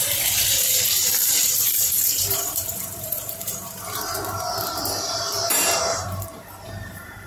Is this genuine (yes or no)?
no